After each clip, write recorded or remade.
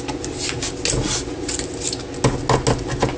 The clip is recorded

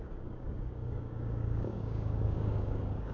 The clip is remade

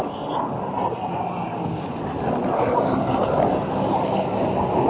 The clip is recorded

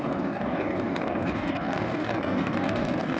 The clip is remade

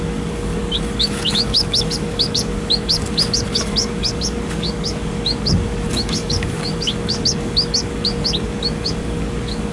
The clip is remade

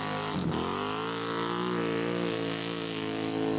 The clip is recorded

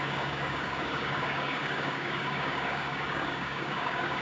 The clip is remade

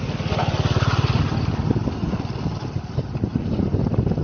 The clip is recorded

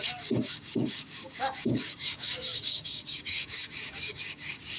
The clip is remade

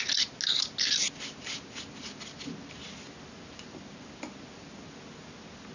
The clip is recorded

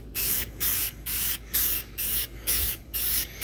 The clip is remade